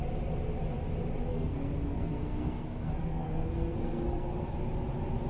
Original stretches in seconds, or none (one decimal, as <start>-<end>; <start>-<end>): 0.0-1.3; 4.5-5.3